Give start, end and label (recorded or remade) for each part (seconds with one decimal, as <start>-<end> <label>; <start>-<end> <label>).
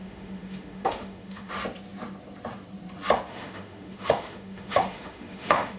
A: 0.0-1.5 remade; 1.5-3.3 recorded; 3.3-5.8 remade